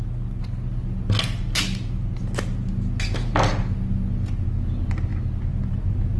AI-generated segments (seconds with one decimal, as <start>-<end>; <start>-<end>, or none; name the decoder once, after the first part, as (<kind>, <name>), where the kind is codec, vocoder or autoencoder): none